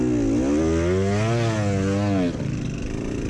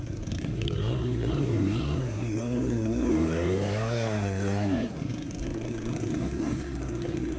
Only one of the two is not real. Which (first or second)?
second